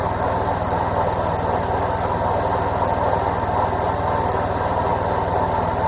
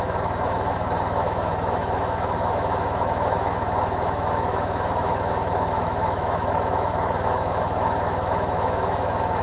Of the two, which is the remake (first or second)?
second